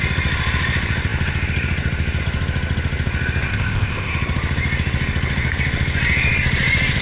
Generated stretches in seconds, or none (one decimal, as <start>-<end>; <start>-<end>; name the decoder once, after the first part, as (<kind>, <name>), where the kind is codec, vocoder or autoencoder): 3.5-4.1 (codec, ZipCodec)